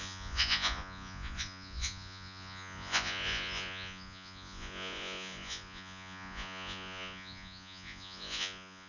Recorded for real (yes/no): no